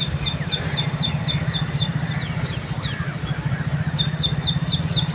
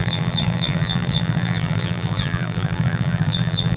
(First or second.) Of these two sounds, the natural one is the first